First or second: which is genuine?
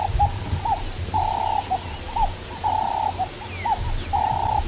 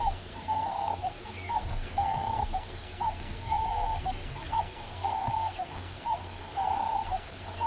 first